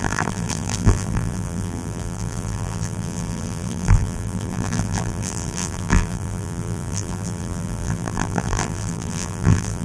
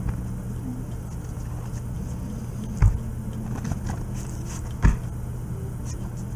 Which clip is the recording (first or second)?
second